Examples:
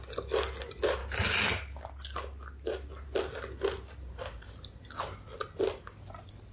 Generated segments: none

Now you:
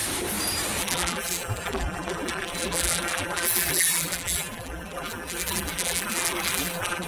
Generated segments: 0.8-7.1 (vocoder, BigVGAN v2)

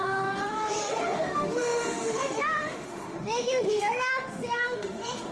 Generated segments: 0.0-5.3 (autoencoder, DAC-VAE)